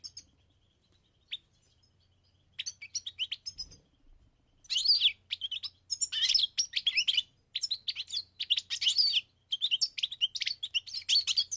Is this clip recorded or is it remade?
recorded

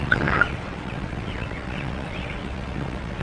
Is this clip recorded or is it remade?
remade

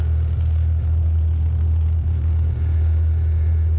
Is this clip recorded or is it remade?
recorded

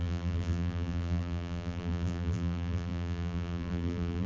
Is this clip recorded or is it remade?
remade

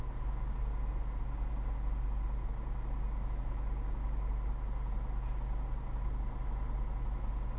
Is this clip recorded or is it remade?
recorded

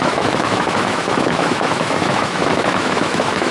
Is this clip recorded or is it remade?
remade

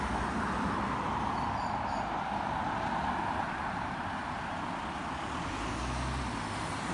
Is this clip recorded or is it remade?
recorded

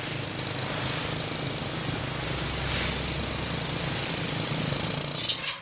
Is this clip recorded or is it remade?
recorded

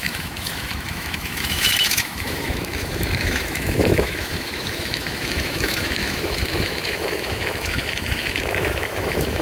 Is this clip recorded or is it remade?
remade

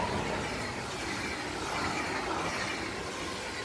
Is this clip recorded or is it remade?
recorded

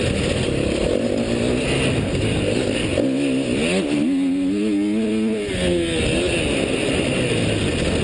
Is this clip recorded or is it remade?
recorded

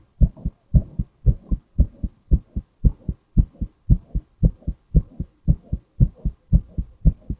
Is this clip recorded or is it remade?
recorded